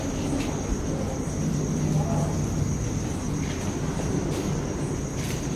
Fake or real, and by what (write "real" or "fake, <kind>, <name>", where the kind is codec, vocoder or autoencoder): real